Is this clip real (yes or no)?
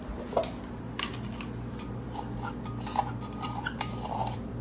no